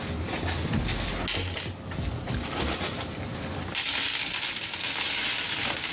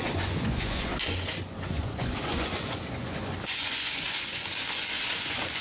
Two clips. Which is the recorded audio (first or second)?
first